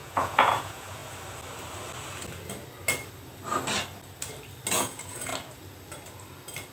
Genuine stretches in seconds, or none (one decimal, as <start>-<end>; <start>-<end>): 1.0-4.7; 5.3-6.7

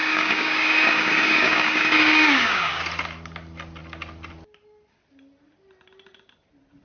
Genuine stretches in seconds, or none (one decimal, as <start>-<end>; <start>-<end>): 2.8-6.8

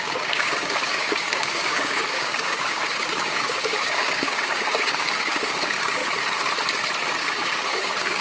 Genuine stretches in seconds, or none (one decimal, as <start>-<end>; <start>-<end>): 6.0-7.1

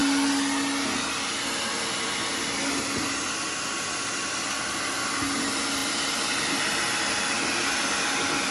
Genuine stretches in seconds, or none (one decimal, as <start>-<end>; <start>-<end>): 0.0-8.5

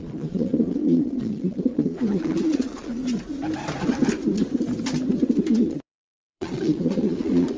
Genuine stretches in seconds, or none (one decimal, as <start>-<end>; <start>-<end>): 3.0-5.6

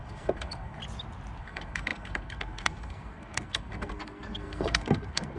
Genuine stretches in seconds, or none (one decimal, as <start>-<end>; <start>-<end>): 0.8-1.4

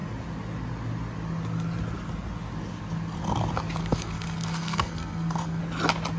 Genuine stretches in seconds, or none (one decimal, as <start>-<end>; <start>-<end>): 0.0-3.8; 5.6-6.2